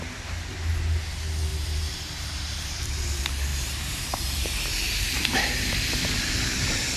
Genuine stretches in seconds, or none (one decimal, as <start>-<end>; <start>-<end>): 0.0-1.5; 2.8-3.5; 5.4-7.0